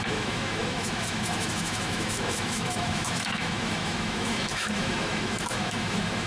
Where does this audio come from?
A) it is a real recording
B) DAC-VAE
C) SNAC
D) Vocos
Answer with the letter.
B